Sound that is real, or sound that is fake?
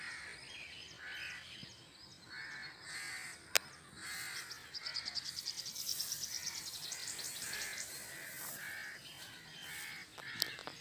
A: real